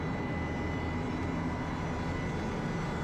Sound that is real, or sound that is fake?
real